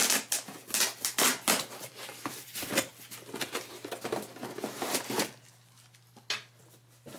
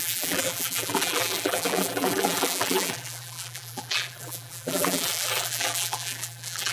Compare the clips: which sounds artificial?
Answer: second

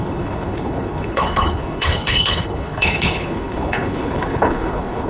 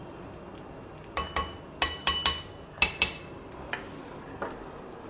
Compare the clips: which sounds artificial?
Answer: first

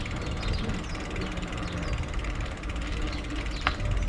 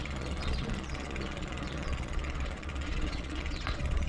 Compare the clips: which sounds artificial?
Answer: second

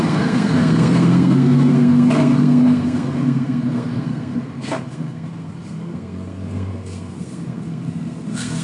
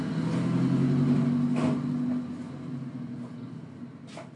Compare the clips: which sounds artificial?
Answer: first